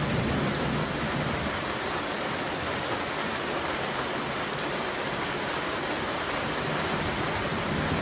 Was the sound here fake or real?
real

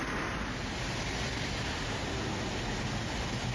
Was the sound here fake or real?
real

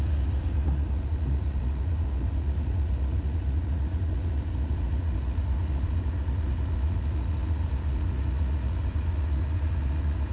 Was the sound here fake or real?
fake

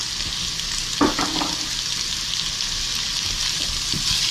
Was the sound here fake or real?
real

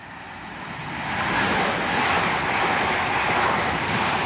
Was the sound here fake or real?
real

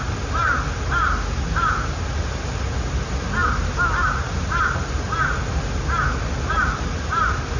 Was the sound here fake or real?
real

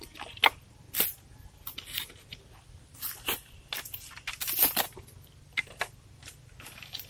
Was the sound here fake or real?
real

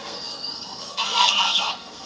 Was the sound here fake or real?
fake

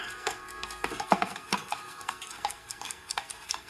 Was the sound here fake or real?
fake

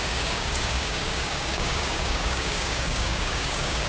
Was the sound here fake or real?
fake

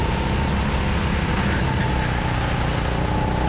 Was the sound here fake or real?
real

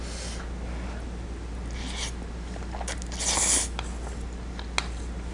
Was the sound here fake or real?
real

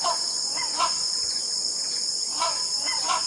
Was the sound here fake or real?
fake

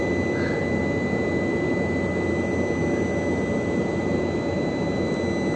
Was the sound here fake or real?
real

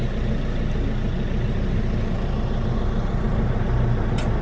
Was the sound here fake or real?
real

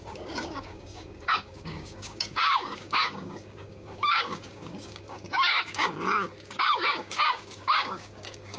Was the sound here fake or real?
fake